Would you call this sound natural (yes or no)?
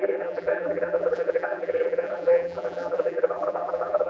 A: no